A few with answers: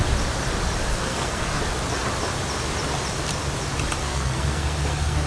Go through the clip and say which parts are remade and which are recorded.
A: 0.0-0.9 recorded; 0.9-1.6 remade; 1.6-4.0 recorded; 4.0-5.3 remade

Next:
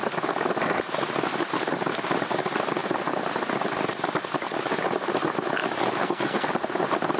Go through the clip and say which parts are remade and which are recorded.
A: 0.0-6.0 recorded; 6.0-6.5 remade; 6.5-7.2 recorded

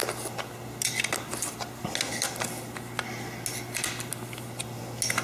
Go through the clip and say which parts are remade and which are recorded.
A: 0.0-5.2 recorded

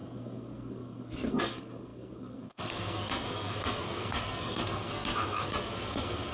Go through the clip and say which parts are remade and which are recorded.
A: 0.0-6.3 remade

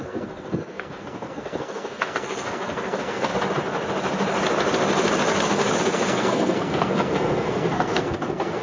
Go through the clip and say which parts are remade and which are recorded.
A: 0.0-3.3 remade; 3.3-5.8 recorded; 5.8-8.6 remade

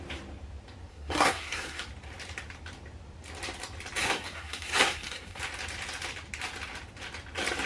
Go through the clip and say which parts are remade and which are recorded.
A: 0.0-0.9 recorded; 0.9-1.9 remade; 1.9-4.0 recorded; 4.0-5.4 remade; 5.4-7.7 recorded

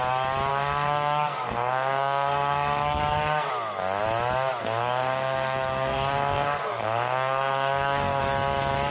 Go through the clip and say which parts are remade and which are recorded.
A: 0.0-0.5 recorded; 0.5-3.5 remade; 3.5-4.6 recorded; 4.6-8.2 remade; 8.2-8.9 recorded

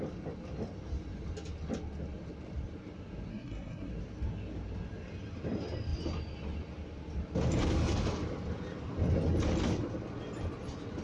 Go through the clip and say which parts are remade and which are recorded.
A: 0.0-3.3 recorded; 3.3-3.9 remade; 3.9-11.0 recorded